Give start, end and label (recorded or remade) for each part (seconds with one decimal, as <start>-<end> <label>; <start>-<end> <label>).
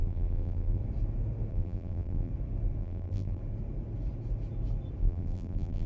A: 0.0-0.8 remade; 0.8-1.5 recorded; 1.5-2.3 remade; 2.3-2.8 recorded; 2.8-3.4 remade; 3.4-5.0 recorded; 5.0-5.9 remade